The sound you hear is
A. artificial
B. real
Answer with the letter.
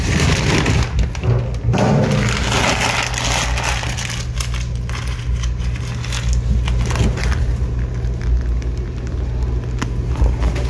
B